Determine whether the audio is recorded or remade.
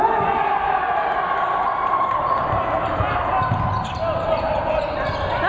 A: recorded